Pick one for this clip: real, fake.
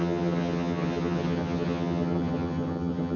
fake